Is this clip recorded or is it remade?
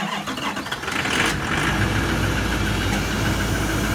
recorded